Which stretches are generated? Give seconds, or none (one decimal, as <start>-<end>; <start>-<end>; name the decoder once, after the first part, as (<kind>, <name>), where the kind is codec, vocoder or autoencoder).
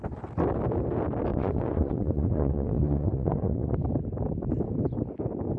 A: 1.3-3.8 (vocoder, Vocos)